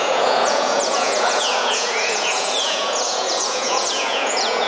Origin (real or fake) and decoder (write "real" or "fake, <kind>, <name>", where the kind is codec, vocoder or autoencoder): fake, vocoder, Vocos